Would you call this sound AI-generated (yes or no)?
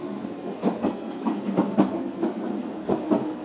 yes